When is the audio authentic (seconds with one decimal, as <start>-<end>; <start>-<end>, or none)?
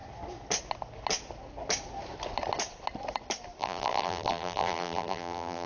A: 0.0-3.6